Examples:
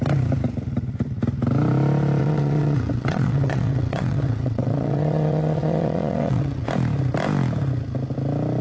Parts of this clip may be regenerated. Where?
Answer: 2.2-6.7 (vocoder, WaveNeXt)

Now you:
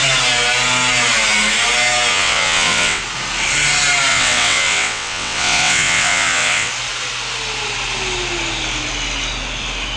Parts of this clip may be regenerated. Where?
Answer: 2.1-3.0 (vocoder, WaveNeXt); 4.1-6.7

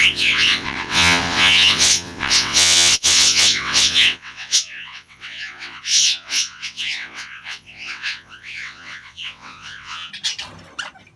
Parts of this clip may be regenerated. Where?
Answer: 0.0-10.1 (vocoder, WaveNeXt)